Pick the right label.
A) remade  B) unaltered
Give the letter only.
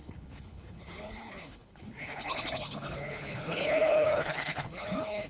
A